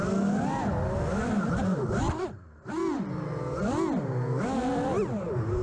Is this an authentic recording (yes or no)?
yes